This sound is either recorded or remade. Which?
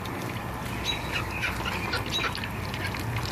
recorded